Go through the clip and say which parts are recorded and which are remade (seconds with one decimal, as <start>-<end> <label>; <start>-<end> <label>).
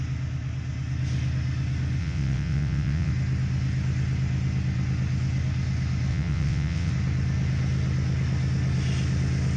0.0-2.0 recorded; 2.0-3.1 remade; 3.1-6.1 recorded; 6.1-6.9 remade; 6.9-9.6 recorded